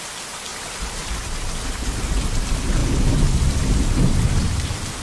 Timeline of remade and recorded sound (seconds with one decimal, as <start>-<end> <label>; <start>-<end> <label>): 0.0-5.0 recorded